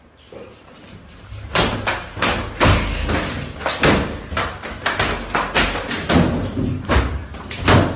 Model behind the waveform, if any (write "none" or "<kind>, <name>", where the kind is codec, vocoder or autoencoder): none